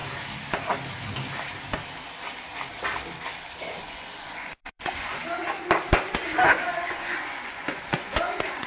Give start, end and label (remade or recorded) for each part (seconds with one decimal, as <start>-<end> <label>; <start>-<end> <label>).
0.0-3.8 recorded; 3.8-5.2 remade; 5.2-6.5 recorded; 6.5-8.7 remade